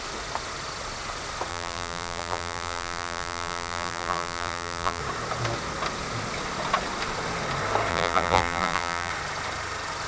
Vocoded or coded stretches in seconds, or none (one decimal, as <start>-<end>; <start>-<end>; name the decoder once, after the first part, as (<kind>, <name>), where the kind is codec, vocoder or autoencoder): 1.5-5.0 (vocoder, BigVGAN v2); 7.9-9.1

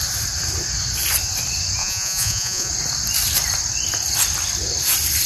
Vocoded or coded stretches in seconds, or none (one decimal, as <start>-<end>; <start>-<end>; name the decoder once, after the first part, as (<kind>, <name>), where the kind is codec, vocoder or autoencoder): 1.8-2.7 (vocoder, Vocos)

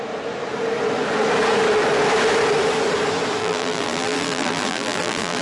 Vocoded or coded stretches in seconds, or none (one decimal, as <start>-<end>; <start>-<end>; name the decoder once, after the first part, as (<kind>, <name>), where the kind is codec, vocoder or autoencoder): 3.4-5.4 (vocoder, BigVGAN v2)

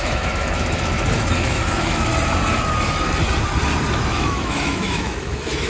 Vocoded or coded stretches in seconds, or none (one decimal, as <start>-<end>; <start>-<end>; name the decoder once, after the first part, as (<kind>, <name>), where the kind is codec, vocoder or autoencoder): 0.0-2.1 (autoencoder, DAC-VAE); 3.9-5.7

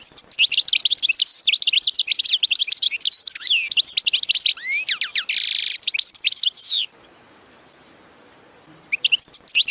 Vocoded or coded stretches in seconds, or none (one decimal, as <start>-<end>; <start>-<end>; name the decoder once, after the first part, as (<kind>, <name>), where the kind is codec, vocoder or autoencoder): 1.3-3.7 (vocoder, BigVGAN v2); 5.1-9.7

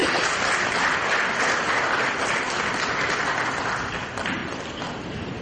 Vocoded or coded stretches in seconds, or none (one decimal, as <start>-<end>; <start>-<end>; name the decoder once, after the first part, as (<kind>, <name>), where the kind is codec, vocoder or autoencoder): none

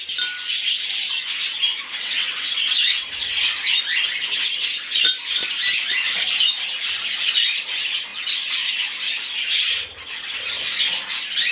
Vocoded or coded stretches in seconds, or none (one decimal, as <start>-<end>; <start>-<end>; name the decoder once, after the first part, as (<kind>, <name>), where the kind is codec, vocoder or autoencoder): 2.0-3.4 (vocoder, WaveNeXt)